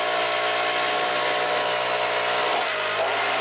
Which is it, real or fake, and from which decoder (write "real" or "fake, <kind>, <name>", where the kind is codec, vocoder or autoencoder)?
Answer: real